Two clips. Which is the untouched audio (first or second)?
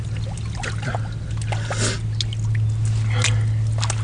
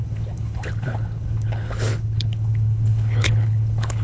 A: first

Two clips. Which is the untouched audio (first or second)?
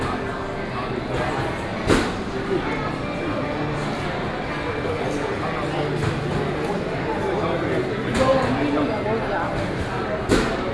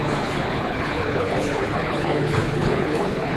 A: first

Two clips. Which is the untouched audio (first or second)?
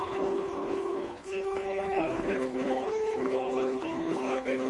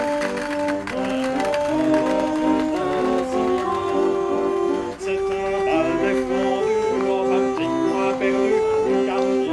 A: second